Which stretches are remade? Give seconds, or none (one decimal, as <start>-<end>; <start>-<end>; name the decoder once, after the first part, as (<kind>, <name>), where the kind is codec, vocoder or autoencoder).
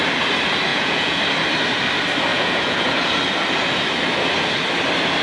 0.7-1.2 (vocoder, Vocos); 2.3-3.0